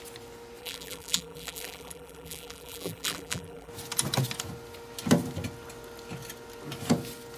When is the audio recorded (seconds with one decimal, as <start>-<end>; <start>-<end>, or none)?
0.0-0.6; 3.7-7.4